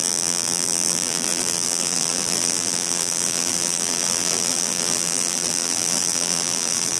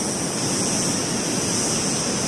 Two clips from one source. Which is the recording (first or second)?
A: second